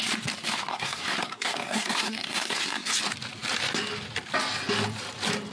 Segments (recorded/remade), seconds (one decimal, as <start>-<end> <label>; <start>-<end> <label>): 0.0-0.7 recorded; 0.7-2.9 remade; 2.9-5.5 recorded